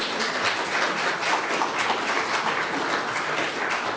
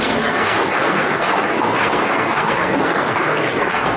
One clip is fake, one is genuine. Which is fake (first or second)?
second